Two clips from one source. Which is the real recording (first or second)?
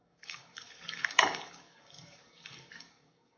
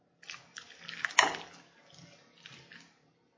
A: second